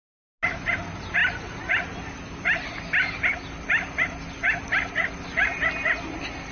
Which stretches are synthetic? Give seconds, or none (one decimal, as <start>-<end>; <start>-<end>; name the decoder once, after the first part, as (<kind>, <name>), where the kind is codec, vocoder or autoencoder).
none